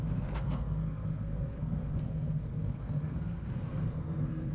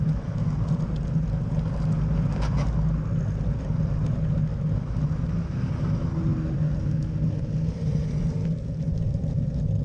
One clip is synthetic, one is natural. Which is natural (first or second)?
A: second